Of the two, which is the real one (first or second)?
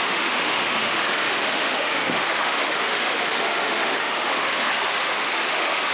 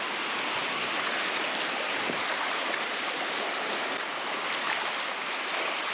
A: second